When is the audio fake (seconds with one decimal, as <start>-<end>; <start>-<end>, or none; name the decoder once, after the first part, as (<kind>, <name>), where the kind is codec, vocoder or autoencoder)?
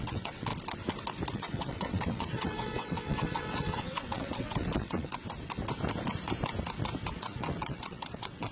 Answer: 0.0-0.5 (vocoder, WaveNeXt); 1.3-5.1; 7.1-8.5